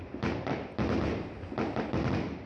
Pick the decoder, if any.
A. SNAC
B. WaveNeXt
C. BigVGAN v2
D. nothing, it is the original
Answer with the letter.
D